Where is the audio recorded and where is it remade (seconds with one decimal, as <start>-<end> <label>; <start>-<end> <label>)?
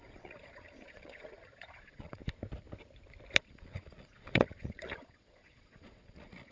0.0-2.2 remade; 2.2-3.4 recorded; 3.4-6.5 remade